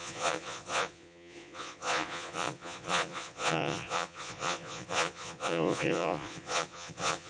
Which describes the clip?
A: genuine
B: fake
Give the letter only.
B